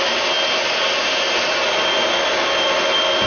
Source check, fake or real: real